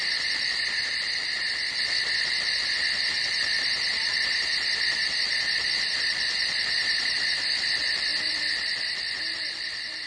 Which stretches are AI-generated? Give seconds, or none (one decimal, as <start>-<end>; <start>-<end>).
none